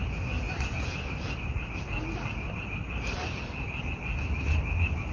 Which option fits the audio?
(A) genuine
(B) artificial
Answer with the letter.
A